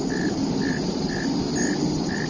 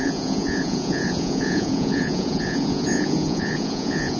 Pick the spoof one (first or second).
second